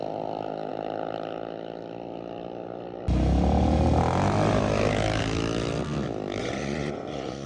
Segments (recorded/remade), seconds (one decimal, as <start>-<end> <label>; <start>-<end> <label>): 0.0-6.4 recorded; 6.4-7.5 remade

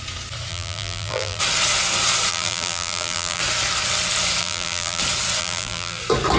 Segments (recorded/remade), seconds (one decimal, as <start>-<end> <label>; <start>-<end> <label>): 0.0-0.5 recorded; 0.5-1.4 remade; 1.4-2.3 recorded; 2.3-3.4 remade; 3.4-4.4 recorded; 4.4-5.0 remade; 5.0-5.4 recorded; 5.4-6.0 remade; 6.0-6.4 recorded

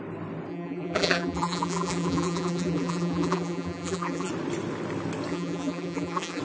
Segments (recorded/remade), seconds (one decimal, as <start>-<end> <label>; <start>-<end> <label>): 0.0-0.5 recorded; 0.5-4.3 remade; 4.3-5.3 recorded; 5.3-6.4 remade

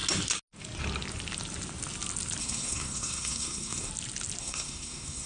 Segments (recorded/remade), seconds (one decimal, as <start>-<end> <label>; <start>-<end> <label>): 0.0-2.4 recorded; 2.4-3.9 remade; 3.9-4.4 recorded; 4.4-5.3 remade

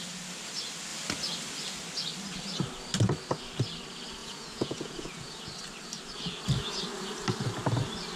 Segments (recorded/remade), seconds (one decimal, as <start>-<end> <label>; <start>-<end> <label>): 0.0-4.2 recorded; 4.2-5.4 remade; 5.4-8.2 recorded